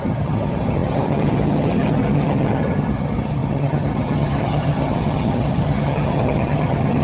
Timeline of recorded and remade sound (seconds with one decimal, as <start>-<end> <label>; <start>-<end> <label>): 0.0-7.0 remade